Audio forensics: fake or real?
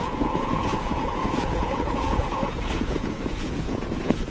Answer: fake